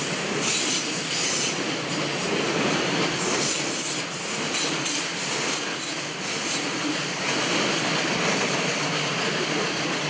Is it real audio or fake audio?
real